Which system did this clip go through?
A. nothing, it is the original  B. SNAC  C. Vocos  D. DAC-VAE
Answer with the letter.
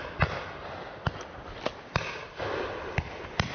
A